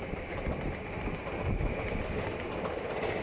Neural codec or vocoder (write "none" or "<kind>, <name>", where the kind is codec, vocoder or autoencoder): none